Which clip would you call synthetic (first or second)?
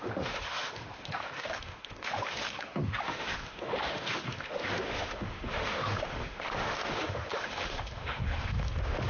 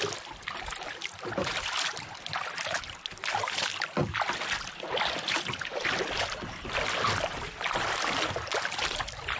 first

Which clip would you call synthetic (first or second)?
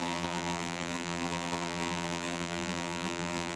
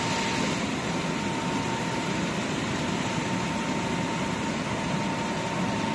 first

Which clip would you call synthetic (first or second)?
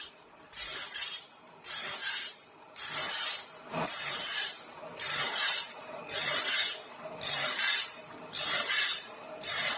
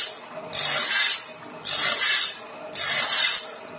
first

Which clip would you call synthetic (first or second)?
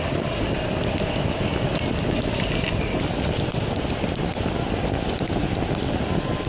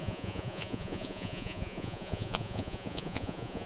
second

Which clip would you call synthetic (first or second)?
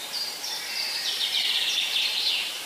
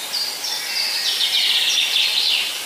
first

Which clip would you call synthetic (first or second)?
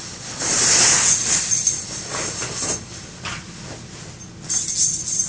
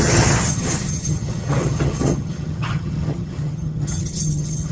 second